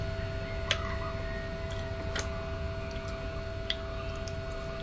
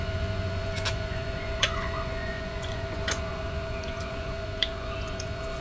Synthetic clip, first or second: second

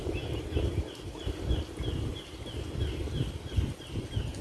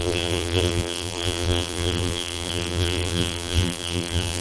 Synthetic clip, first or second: second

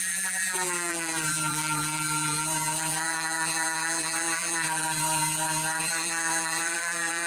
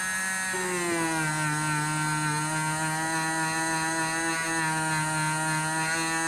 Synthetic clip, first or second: first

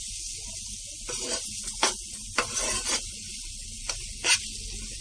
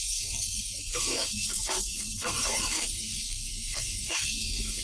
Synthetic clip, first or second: second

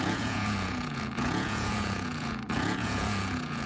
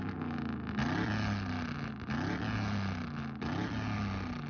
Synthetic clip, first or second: first